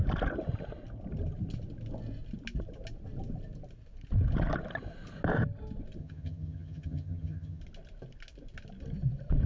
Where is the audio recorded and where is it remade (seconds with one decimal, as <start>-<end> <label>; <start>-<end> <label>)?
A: 0.0-6.0 recorded; 6.0-7.6 remade; 7.6-9.5 recorded